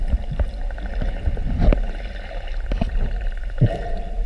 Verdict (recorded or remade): recorded